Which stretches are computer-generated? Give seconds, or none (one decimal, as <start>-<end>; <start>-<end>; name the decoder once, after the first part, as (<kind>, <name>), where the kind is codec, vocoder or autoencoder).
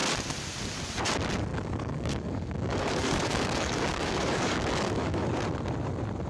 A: 1.5-5.3 (codec, DAC)